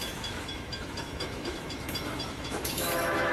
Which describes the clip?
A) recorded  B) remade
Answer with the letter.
B